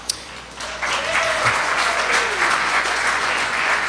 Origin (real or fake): fake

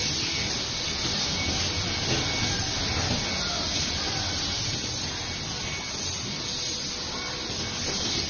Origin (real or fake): real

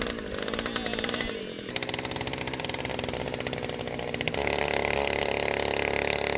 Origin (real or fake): real